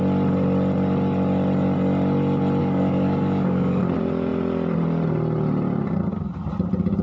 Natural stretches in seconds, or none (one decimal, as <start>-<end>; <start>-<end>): 0.0-2.6; 3.8-7.0